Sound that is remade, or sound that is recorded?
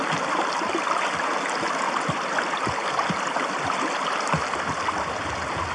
recorded